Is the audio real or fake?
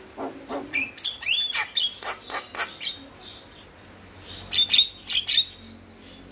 real